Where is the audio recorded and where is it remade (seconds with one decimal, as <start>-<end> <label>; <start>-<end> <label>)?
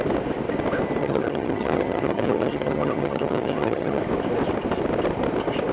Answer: 0.0-1.0 recorded; 1.0-4.0 remade; 4.0-5.7 recorded